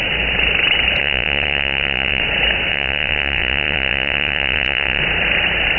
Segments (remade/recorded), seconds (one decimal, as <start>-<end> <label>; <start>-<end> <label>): 0.0-1.0 recorded; 1.0-2.2 remade; 2.2-2.7 recorded; 2.7-5.0 remade; 5.0-5.8 recorded